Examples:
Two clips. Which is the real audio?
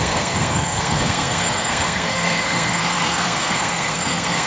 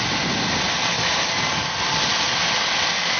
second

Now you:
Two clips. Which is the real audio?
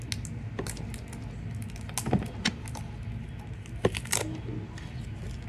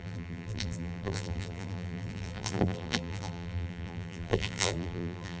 first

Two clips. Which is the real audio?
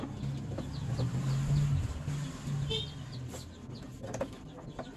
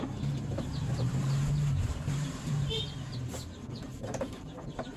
first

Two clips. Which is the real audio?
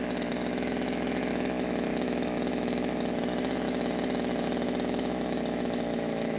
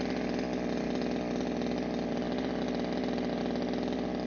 second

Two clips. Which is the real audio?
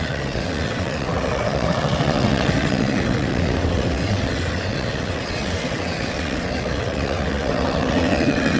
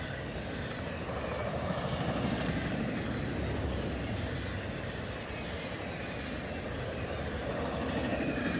second